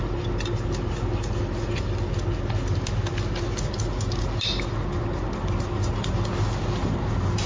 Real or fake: real